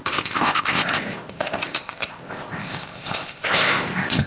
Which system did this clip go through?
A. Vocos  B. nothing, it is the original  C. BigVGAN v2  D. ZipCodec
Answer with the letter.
D